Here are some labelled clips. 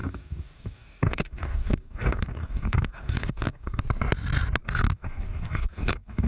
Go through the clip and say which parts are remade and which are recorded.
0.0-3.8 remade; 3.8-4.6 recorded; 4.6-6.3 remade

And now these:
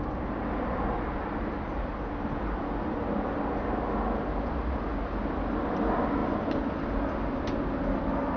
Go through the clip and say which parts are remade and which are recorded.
0.0-8.4 recorded